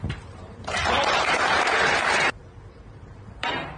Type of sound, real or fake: fake